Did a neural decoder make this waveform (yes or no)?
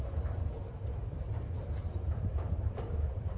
yes